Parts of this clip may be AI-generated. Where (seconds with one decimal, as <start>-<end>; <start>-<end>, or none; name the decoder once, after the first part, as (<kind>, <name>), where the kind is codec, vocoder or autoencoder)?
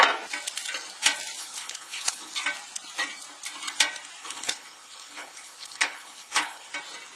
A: 1.4-2.3 (codec, HILCodec); 4.2-6.7